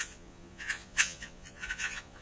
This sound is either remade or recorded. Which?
remade